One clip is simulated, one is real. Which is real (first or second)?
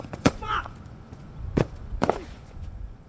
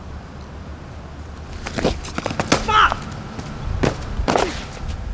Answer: second